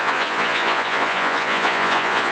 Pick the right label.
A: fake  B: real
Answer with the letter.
A